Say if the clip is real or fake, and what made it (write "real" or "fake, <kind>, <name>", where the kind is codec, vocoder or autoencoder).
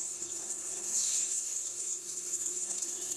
fake, codec, SNAC